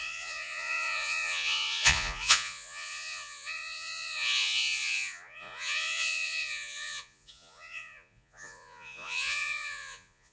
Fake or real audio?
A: fake